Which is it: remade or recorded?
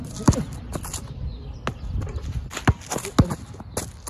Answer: recorded